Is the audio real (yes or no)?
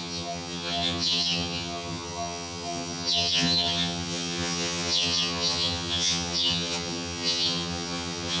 no